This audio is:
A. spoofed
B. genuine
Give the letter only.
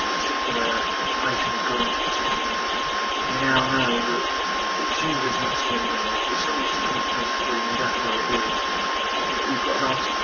B